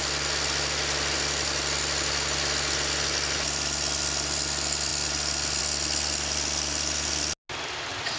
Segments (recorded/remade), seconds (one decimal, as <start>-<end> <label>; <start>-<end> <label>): 0.0-8.2 recorded